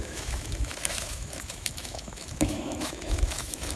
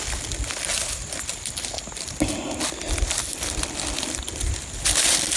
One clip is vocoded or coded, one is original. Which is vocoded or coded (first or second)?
first